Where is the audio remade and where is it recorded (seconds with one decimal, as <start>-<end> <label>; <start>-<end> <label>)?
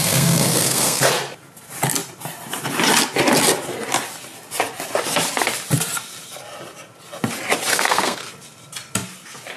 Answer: 0.0-1.1 remade; 1.1-7.7 recorded; 7.7-8.3 remade; 8.3-9.6 recorded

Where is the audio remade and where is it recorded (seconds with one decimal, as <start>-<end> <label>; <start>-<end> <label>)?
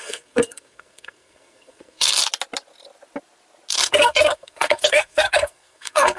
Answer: 0.0-2.2 remade; 2.2-3.7 recorded; 3.7-6.2 remade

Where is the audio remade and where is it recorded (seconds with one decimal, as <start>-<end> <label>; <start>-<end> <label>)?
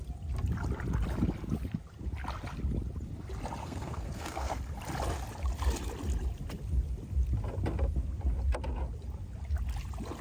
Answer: 0.0-3.6 recorded; 3.6-4.6 remade; 4.6-10.2 recorded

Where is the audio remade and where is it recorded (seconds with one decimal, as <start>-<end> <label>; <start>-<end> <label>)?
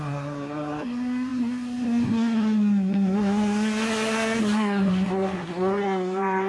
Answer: 0.0-6.5 remade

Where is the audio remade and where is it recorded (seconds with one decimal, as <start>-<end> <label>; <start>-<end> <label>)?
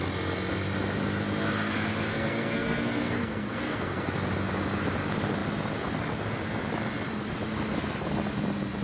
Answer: 0.0-2.1 recorded; 2.1-4.1 remade; 4.1-8.8 recorded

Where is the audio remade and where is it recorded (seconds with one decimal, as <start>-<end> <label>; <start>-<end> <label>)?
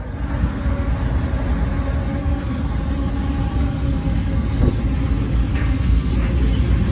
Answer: 0.0-0.4 recorded; 0.4-0.9 remade; 0.9-2.2 recorded; 2.2-2.7 remade; 2.7-3.5 recorded; 3.5-4.8 remade; 4.8-5.5 recorded; 5.5-6.1 remade; 6.1-6.9 recorded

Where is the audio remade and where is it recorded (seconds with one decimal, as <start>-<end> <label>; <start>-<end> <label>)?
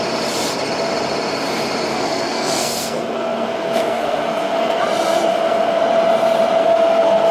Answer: 0.0-1.9 recorded; 1.9-4.8 remade; 4.8-5.3 recorded; 5.3-5.8 remade; 5.8-6.6 recorded; 6.6-7.3 remade